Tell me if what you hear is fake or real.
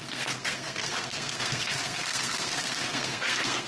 fake